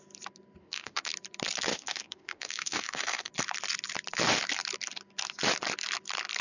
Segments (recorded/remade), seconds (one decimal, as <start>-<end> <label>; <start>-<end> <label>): 0.0-0.6 recorded; 0.6-1.1 remade; 1.1-1.7 recorded; 1.7-3.3 remade; 3.3-6.4 recorded